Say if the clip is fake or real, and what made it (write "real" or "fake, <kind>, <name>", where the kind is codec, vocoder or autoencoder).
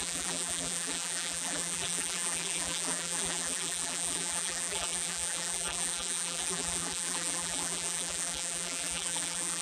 fake, vocoder, BigVGAN v2